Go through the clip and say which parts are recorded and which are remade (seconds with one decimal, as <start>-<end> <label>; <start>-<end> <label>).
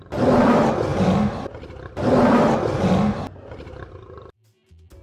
0.0-5.0 recorded